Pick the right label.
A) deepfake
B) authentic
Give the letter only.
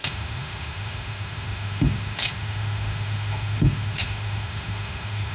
A